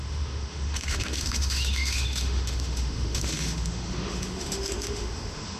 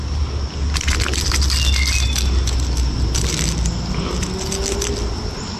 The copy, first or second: first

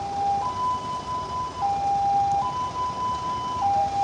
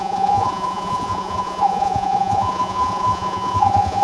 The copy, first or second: second